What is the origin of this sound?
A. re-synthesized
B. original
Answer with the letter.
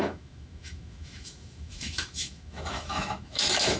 A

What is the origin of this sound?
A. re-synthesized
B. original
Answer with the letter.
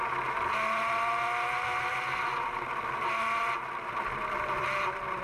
B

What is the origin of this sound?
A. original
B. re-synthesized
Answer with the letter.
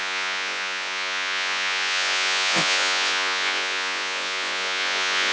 B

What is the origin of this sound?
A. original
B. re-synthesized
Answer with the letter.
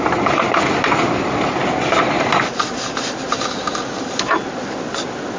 A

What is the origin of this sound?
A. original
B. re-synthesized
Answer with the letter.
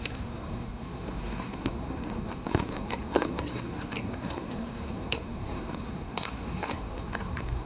B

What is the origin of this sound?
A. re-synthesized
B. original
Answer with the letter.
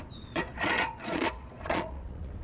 A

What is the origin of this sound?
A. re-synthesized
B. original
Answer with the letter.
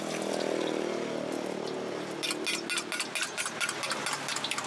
B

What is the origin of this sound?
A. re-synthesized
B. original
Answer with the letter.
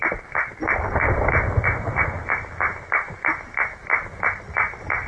B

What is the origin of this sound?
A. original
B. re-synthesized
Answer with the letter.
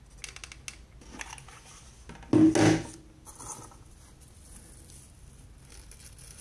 A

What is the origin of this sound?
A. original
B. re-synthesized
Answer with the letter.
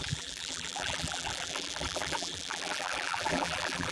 B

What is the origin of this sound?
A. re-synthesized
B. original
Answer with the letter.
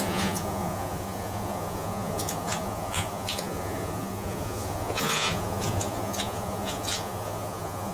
A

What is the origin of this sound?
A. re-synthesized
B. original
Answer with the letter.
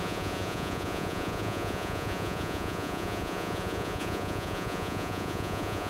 A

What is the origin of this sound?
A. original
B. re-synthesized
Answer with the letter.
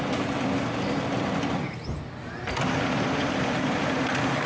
A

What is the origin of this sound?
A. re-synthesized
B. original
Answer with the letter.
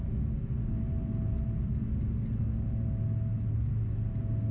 B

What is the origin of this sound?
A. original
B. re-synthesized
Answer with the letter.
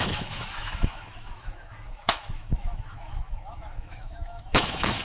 B